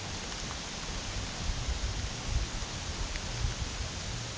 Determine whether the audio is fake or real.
real